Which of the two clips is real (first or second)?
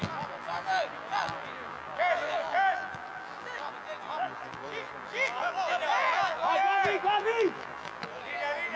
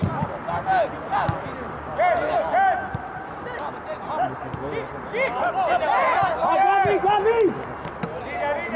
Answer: second